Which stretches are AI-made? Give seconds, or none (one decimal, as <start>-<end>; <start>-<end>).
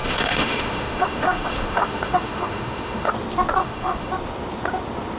0.0-3.1; 3.6-4.1